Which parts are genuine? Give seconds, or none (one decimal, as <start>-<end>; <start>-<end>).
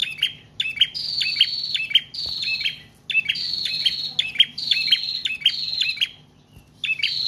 0.0-7.3